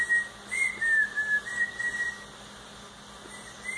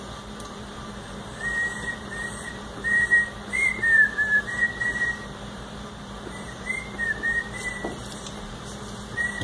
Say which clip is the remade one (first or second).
second